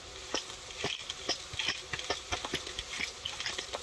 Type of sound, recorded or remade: recorded